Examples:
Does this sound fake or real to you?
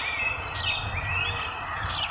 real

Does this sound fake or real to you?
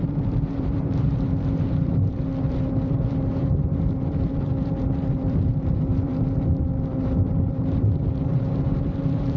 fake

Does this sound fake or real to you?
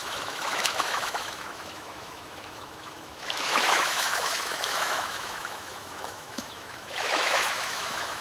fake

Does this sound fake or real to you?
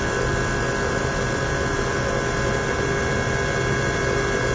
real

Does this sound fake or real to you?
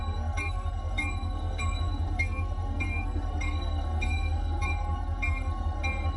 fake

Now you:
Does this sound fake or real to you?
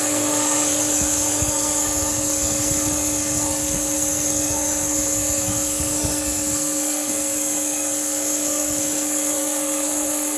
fake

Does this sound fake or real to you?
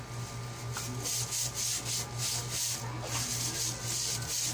real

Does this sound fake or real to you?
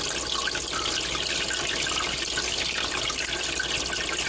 real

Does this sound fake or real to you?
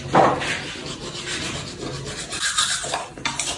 real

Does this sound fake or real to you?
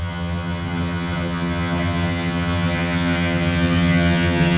fake